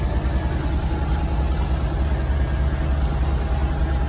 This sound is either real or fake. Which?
real